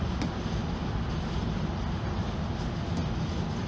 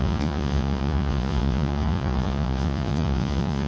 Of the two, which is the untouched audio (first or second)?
first